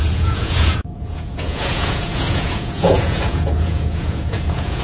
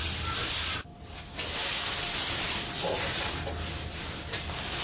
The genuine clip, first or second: second